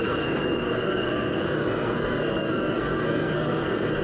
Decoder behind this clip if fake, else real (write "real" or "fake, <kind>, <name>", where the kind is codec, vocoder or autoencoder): fake, codec, SNAC